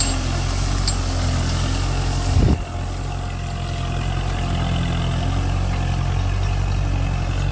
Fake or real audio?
real